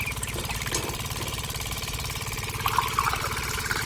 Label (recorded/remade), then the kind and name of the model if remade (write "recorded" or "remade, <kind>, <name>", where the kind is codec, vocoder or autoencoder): recorded